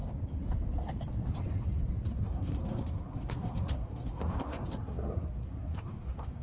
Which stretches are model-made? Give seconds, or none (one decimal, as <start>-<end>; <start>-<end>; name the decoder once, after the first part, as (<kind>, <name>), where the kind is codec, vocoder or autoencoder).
2.1-6.4 (codec, SNAC)